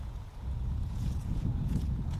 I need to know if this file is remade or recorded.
remade